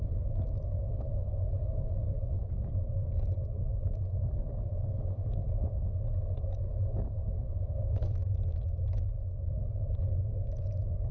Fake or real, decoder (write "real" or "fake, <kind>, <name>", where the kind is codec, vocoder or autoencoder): fake, codec, DAC